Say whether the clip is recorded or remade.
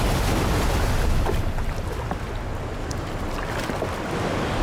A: recorded